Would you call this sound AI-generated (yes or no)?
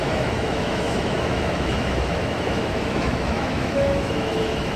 yes